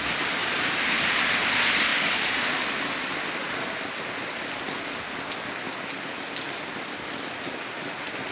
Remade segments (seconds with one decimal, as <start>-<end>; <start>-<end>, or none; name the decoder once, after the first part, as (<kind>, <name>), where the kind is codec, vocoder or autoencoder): 0.4-0.9 (vocoder, BigVGAN v2)